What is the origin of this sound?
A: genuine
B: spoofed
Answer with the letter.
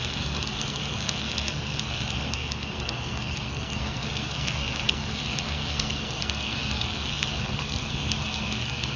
B